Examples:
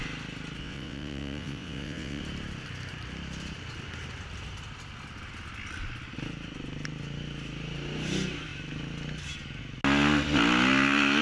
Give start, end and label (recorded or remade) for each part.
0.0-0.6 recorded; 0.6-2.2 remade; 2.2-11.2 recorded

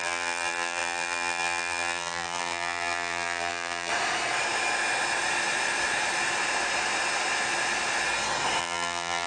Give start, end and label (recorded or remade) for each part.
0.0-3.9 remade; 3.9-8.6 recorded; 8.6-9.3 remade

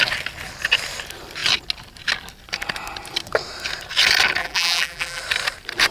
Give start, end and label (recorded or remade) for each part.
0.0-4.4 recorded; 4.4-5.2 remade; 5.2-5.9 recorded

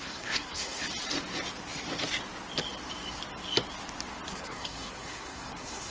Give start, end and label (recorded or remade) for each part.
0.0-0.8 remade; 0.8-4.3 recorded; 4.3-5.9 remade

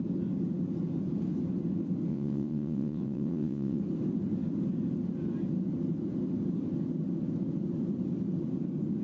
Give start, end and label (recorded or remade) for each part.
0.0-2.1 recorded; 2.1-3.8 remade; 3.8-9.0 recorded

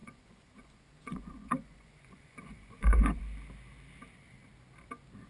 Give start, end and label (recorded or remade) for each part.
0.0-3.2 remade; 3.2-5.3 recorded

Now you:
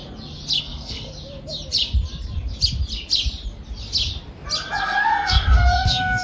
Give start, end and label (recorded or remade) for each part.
0.0-0.6 recorded; 0.6-1.1 remade; 1.1-4.8 recorded; 4.8-6.2 remade

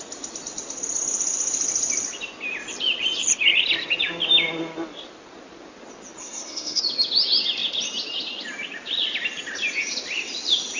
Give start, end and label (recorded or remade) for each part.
0.0-6.2 recorded; 6.2-6.8 remade; 6.8-10.8 recorded